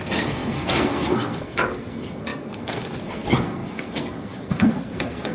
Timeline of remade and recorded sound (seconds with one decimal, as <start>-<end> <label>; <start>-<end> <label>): 0.0-5.3 remade